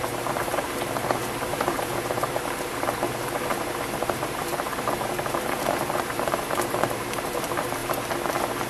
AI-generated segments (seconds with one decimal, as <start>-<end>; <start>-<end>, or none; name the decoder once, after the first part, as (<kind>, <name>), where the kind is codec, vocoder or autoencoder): 0.0-7.8 (vocoder, BigVGAN v2)